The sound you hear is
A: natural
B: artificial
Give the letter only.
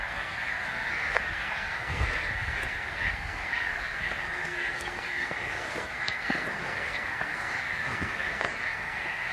B